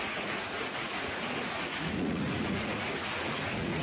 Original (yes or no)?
no